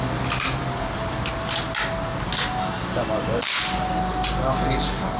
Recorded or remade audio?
recorded